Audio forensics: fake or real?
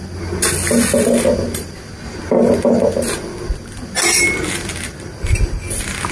real